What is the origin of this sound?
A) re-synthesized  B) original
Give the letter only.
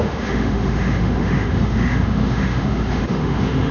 A